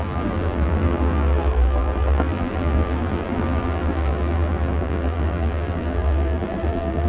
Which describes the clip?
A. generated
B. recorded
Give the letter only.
A